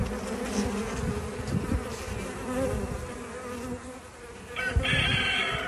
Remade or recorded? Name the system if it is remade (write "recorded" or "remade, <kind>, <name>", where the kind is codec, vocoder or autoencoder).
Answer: recorded